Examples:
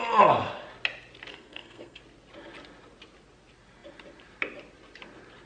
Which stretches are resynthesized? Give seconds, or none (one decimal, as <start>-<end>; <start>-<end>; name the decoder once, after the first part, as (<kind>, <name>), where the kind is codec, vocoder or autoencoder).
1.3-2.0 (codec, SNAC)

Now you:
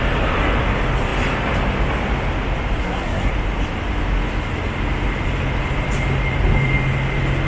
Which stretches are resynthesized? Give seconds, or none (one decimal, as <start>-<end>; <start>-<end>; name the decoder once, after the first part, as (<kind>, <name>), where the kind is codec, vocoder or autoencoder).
2.8-3.3 (codec, SNAC)

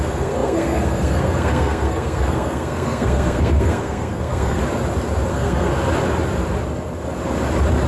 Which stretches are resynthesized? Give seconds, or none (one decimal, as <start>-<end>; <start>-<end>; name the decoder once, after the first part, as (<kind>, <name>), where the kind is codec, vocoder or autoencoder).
0.0-4.6 (codec, SNAC); 5.3-5.7

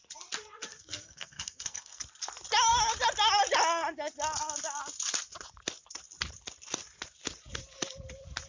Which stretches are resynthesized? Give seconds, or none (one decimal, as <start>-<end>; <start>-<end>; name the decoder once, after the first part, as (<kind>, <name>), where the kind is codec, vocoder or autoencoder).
0.7-2.0 (codec, SNAC)

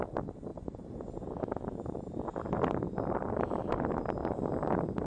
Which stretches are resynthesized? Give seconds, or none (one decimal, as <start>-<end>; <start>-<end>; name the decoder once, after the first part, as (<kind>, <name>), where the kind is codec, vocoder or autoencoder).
none

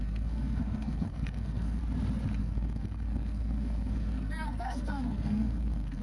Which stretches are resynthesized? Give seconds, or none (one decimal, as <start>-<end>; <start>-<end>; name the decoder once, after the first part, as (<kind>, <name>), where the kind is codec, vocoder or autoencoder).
0.0-1.8 (codec, SNAC); 2.4-6.0